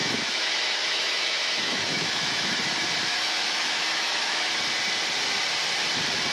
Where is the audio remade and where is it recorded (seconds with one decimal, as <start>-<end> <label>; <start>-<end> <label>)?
0.0-2.6 remade; 2.6-3.1 recorded; 3.1-4.5 remade; 4.5-6.3 recorded